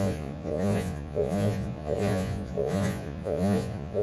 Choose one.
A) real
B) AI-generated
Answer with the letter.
B